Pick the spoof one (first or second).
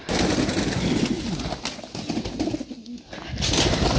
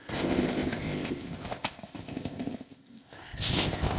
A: second